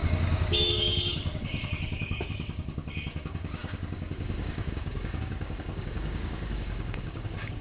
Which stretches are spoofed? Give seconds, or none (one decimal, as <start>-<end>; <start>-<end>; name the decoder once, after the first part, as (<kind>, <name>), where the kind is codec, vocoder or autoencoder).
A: 0.0-7.6 (codec, DAC)